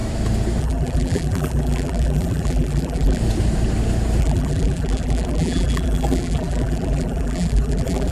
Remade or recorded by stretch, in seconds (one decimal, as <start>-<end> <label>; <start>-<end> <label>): 0.0-0.6 recorded; 0.6-3.2 remade; 3.2-4.2 recorded; 4.2-8.1 remade